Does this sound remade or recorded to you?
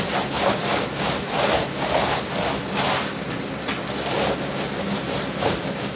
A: recorded